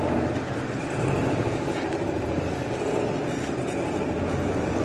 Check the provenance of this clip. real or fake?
real